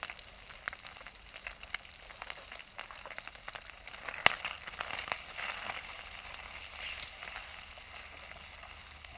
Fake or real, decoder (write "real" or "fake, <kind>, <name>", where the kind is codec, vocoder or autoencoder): real